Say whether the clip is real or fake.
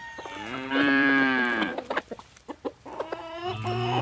fake